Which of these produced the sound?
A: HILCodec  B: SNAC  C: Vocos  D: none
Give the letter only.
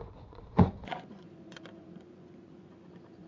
C